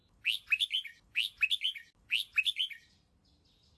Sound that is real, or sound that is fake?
real